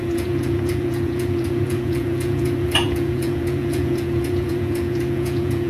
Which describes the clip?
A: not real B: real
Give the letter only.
A